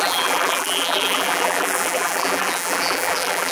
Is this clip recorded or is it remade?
remade